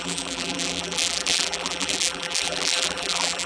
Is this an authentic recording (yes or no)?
no